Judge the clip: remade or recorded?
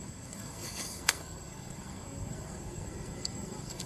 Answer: remade